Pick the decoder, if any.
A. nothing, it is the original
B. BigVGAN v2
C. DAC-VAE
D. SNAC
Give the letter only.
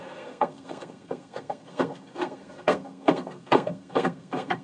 D